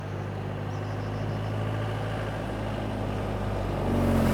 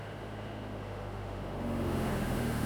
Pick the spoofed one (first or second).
second